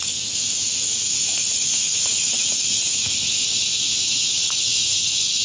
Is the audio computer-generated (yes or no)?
yes